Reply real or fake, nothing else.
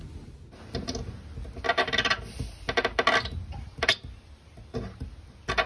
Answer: real